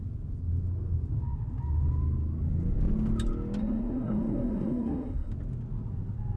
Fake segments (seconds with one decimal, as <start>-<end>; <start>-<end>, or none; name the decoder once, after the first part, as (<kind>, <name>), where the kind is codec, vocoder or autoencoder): 3.6-5.3 (codec, SNAC)